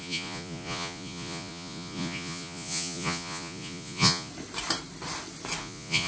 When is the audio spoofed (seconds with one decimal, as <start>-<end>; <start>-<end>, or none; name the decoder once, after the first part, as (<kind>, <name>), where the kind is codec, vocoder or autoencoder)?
0.0-4.3 (vocoder, Vocos); 5.6-6.1